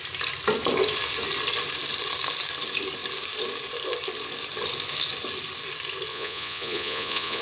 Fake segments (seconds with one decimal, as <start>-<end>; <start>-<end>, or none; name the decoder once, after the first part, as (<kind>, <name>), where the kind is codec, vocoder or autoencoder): 6.1-7.4 (vocoder, Vocos)